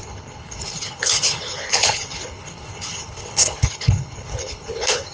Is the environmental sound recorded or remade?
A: remade